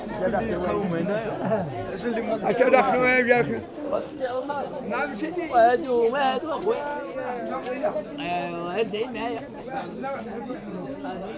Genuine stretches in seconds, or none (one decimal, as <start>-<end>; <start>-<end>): 0.0-3.7; 4.5-11.4

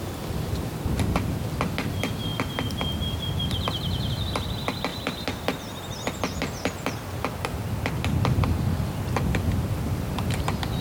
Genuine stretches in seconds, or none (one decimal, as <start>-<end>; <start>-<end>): 0.0-10.8